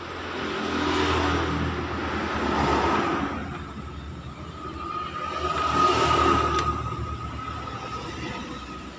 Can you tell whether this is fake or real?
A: real